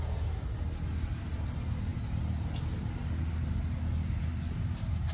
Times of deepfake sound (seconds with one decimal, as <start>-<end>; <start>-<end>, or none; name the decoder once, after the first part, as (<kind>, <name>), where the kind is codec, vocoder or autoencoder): none